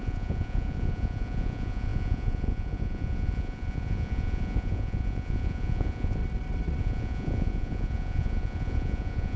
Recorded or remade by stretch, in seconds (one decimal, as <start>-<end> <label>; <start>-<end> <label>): 0.0-6.2 remade; 6.2-6.8 recorded; 6.8-9.4 remade

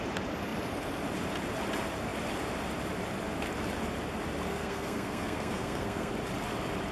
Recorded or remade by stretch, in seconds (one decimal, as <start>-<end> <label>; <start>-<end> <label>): 0.0-4.5 recorded; 4.5-6.1 remade; 6.1-6.9 recorded